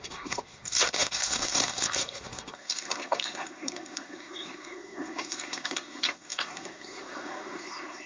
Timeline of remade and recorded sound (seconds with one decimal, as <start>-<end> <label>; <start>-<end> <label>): 0.0-8.1 remade